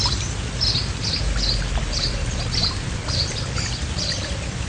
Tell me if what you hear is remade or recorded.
recorded